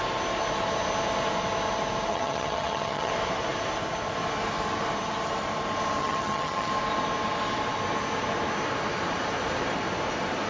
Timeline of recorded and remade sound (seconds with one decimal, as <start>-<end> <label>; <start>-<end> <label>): 0.0-2.1 recorded; 2.1-3.1 remade; 3.1-6.0 recorded; 6.0-6.7 remade; 6.7-10.5 recorded